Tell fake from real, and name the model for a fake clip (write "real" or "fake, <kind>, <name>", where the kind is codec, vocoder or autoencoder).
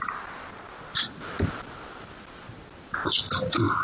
real